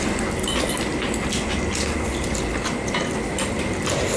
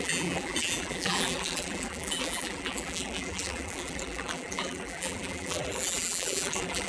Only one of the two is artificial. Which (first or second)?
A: second